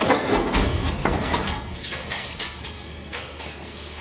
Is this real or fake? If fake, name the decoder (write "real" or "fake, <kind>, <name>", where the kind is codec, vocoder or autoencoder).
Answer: fake, codec, SNAC